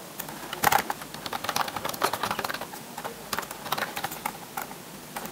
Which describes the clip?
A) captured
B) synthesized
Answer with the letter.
A